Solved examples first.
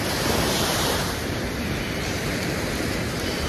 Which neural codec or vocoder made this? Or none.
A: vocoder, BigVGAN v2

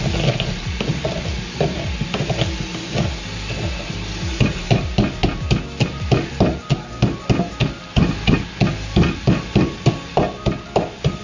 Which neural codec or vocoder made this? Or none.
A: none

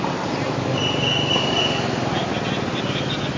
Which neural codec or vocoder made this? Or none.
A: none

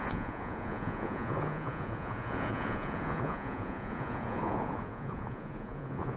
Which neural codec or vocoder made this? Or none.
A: vocoder, Vocos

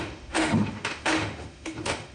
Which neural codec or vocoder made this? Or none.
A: autoencoder, DAC-VAE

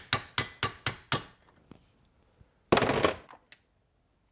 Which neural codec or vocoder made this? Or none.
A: none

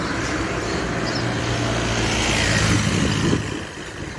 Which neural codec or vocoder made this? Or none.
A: none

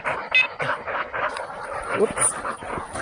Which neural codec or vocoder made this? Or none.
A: none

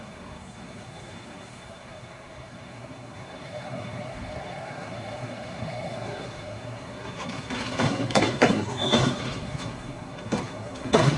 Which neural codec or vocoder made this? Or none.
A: codec, SNAC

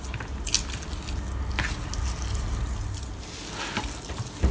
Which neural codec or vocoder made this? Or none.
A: none